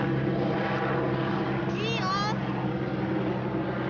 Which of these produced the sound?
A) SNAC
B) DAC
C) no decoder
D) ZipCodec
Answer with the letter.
C